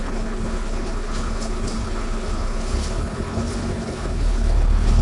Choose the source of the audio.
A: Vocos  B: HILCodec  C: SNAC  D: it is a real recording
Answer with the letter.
B